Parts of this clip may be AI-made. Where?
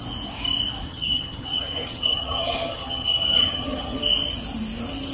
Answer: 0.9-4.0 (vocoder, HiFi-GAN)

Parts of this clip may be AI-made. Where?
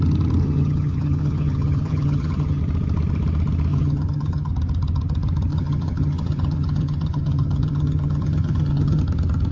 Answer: 0.4-2.6 (vocoder, HiFi-GAN); 3.7-4.5; 5.5-9.0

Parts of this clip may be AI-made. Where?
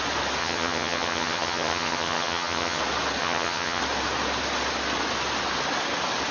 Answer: 0.4-2.8 (vocoder, HiFi-GAN); 3.2-3.8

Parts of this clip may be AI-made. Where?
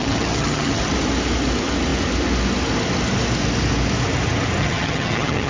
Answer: 0.0-0.8 (vocoder, HiFi-GAN); 4.6-5.5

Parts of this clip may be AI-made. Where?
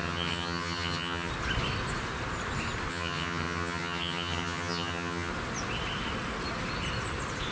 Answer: 0.0-1.3 (vocoder, HiFi-GAN); 2.9-5.3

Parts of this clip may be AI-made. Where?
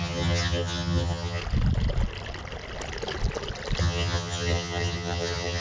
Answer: 0.0-1.4 (vocoder, HiFi-GAN); 3.8-5.6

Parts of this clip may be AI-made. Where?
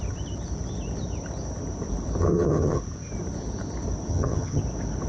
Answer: 2.2-2.8 (vocoder, HiFi-GAN); 4.1-4.6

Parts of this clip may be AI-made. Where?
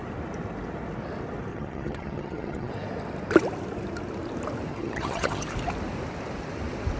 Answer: 1.5-2.7 (vocoder, HiFi-GAN); 4.7-5.5